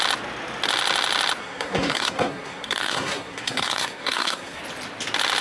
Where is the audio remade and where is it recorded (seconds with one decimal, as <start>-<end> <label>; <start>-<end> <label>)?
0.0-1.4 recorded; 1.4-4.6 remade; 4.6-5.4 recorded